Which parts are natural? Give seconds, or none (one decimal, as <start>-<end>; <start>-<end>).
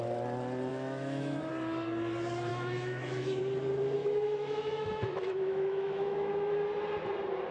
0.0-0.7; 1.5-2.5; 3.4-4.0; 6.5-7.5